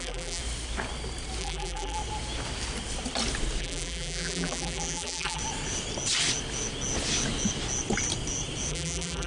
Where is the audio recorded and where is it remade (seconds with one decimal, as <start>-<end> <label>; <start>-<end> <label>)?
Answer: 0.0-0.4 remade; 0.4-1.4 recorded; 1.4-2.0 remade; 2.0-3.6 recorded; 3.6-5.4 remade; 5.4-8.7 recorded; 8.7-9.3 remade